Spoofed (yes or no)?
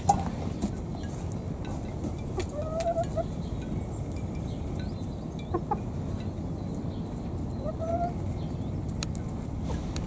no